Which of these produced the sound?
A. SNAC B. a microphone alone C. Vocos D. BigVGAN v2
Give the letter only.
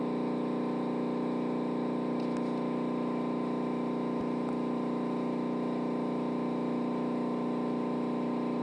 B